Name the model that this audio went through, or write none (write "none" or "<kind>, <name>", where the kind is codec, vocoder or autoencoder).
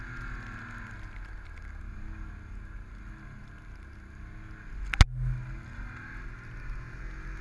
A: none